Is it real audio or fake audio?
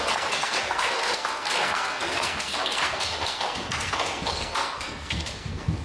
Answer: fake